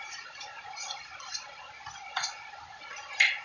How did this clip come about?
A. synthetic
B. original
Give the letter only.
B